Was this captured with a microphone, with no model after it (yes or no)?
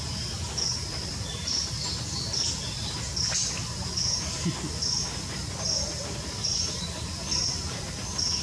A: yes